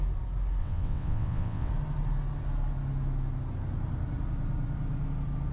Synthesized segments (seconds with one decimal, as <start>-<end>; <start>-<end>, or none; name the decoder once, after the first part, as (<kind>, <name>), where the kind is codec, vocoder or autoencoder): 0.6-1.7 (vocoder, WaveNeXt)